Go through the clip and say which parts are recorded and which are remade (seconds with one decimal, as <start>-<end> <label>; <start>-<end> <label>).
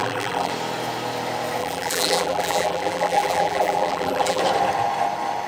0.0-0.5 remade; 0.5-1.6 recorded; 1.6-4.4 remade; 4.4-5.5 recorded